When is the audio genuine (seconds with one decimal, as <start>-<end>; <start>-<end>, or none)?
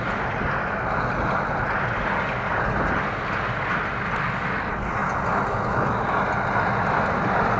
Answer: 0.0-7.6